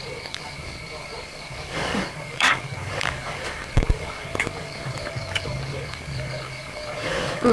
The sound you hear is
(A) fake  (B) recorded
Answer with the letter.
A